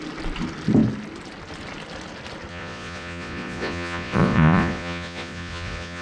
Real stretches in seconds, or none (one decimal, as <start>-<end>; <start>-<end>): 0.0-2.5